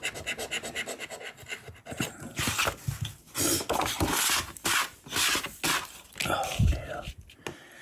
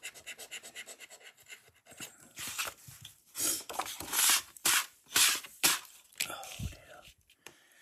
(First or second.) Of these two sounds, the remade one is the second